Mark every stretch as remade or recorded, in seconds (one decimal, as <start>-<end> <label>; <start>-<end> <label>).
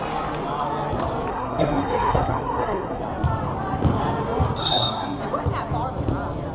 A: 0.0-1.3 recorded; 1.3-3.0 remade; 3.0-4.6 recorded; 4.6-5.2 remade; 5.2-6.5 recorded